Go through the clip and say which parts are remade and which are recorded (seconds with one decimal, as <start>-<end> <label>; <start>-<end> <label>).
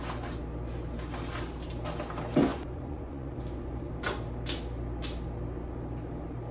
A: 0.0-2.5 recorded; 2.5-3.9 remade; 3.9-6.5 recorded